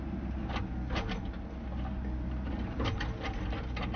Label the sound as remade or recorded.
recorded